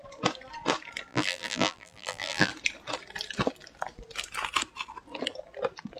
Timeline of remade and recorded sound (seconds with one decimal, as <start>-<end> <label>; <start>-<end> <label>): 0.0-1.1 recorded; 1.1-2.5 remade; 2.5-6.0 recorded